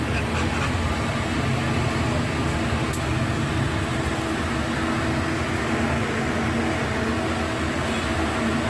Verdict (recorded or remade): recorded